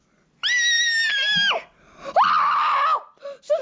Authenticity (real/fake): real